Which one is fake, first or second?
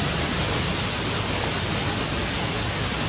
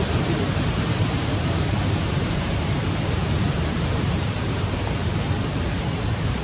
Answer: second